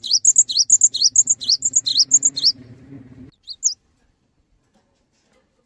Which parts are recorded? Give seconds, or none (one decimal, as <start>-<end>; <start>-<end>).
0.0-5.7